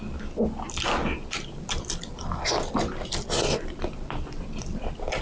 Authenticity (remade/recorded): recorded